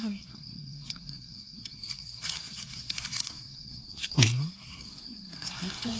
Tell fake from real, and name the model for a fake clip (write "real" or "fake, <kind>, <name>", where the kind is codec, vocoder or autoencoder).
fake, codec, SNAC